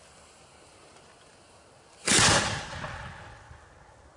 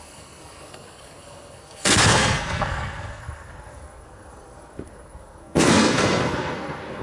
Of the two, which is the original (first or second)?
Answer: first